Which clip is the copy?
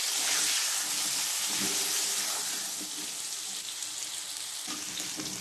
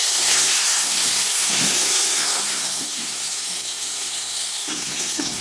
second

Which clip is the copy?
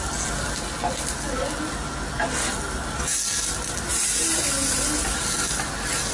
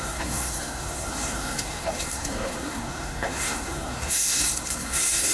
second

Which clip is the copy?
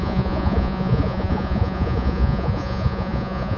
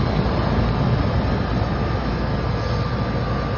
first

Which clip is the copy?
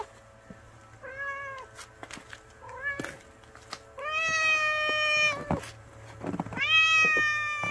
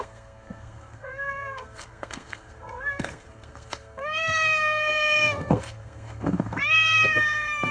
second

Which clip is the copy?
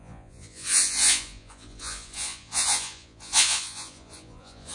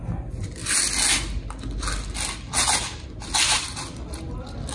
first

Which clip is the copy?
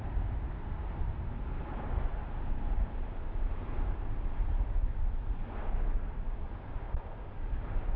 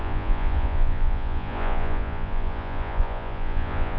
second